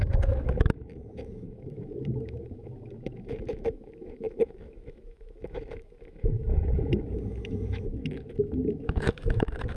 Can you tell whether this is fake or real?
fake